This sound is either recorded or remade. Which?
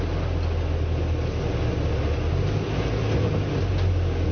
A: recorded